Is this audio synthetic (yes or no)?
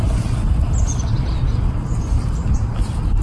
no